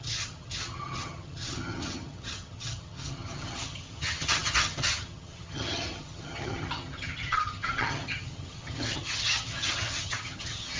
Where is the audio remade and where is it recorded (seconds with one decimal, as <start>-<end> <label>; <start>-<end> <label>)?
0.0-10.8 remade